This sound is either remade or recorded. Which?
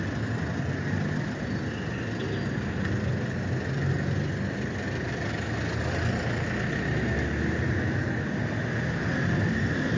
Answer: recorded